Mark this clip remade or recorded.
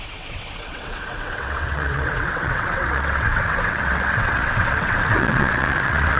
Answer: remade